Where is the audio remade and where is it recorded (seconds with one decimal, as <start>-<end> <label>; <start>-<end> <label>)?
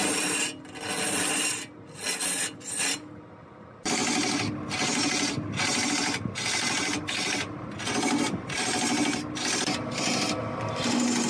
0.0-11.3 recorded